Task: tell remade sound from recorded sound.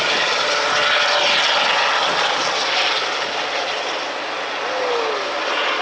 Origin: recorded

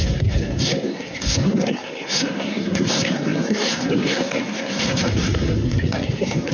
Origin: remade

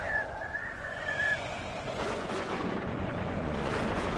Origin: remade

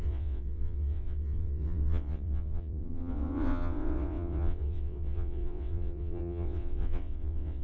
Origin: remade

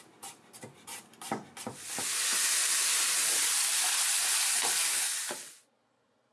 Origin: recorded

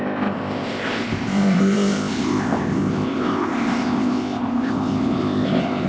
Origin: remade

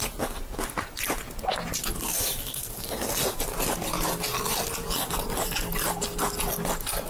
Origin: recorded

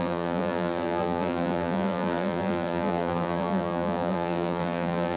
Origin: remade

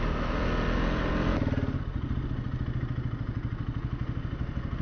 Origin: recorded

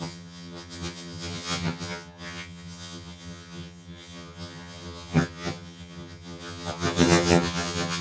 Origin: remade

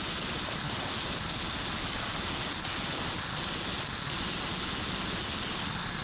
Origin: recorded